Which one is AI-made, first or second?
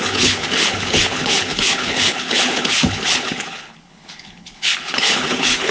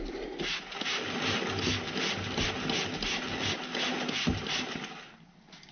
first